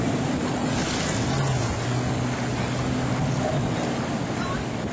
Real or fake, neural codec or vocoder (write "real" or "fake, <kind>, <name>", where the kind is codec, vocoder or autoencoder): real